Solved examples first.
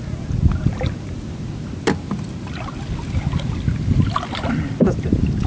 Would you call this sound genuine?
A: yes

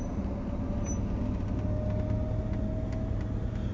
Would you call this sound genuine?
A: yes